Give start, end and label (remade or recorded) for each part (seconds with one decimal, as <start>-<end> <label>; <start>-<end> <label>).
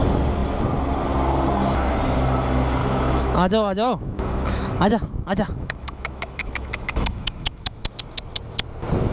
0.0-2.8 recorded; 2.8-7.9 remade; 7.9-9.1 recorded